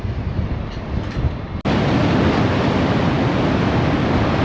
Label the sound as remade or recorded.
recorded